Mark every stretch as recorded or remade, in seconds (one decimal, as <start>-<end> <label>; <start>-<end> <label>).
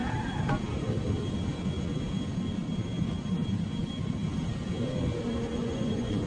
0.0-5.5 recorded; 5.5-6.3 remade